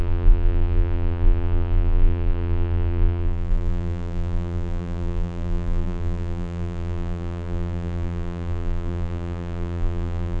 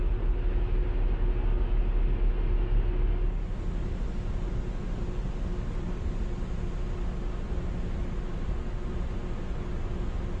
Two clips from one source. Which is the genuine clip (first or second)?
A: second